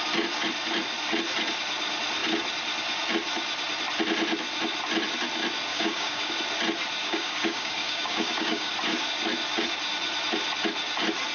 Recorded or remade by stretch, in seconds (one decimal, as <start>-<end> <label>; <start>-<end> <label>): 0.0-5.7 recorded; 5.7-6.3 remade; 6.3-7.0 recorded; 7.0-8.7 remade; 8.7-11.3 recorded